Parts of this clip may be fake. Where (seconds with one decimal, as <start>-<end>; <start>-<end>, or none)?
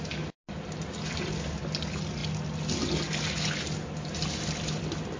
none